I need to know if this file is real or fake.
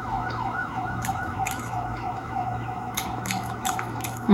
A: fake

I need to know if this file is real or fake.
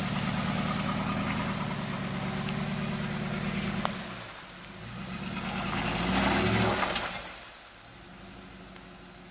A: real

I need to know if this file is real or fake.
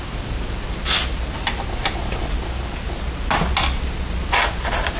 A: real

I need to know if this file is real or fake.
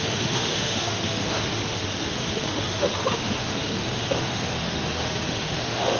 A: fake